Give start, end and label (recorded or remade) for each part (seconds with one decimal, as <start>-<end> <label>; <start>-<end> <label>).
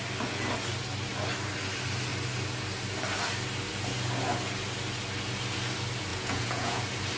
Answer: 0.0-6.1 recorded; 6.1-6.8 remade; 6.8-7.2 recorded